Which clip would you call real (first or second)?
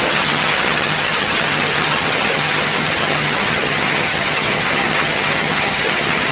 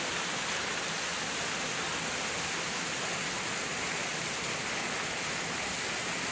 second